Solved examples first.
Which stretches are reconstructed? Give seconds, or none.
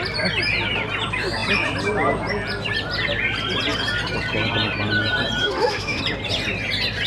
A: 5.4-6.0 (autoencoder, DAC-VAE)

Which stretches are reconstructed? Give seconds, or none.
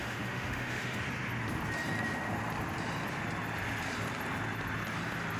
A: 0.0-1.0 (autoencoder, DAC-VAE)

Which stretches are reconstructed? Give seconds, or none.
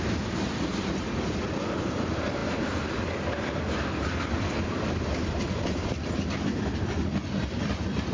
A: none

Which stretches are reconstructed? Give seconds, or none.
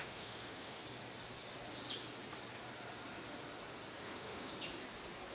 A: 0.0-0.8 (autoencoder, DAC-VAE); 4.0-4.5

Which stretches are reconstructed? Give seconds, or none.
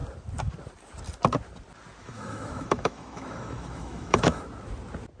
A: 2.0-4.4 (autoencoder, DAC-VAE)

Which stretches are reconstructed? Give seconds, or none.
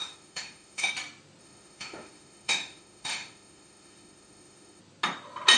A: 0.0-0.9 (autoencoder, DAC-VAE); 1.4-4.8